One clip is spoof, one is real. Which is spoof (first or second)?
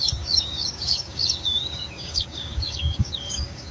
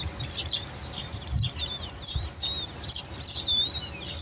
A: first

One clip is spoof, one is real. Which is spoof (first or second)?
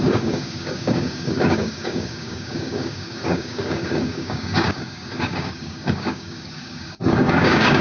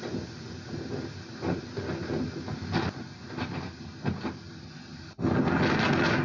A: first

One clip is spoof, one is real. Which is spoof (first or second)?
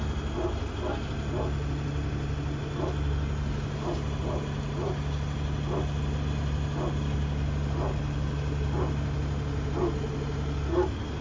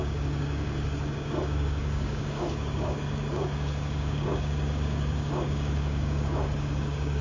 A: second